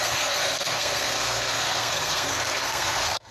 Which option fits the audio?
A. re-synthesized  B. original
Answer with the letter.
A